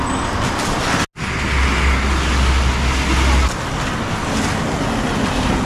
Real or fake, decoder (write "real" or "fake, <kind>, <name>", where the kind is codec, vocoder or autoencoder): real